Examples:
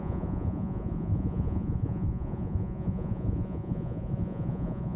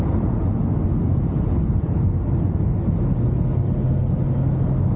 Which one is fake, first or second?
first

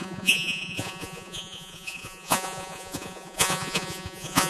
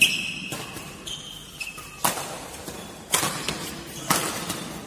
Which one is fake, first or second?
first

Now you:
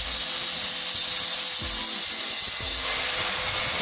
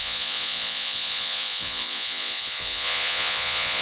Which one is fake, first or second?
second